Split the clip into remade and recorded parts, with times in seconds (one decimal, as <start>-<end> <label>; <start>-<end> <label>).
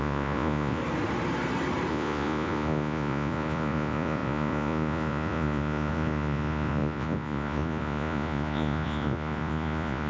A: 0.0-0.8 remade; 0.8-1.9 recorded; 1.9-10.1 remade